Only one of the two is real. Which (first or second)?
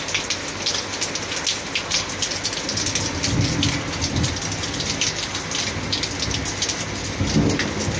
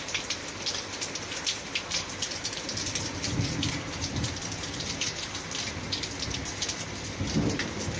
first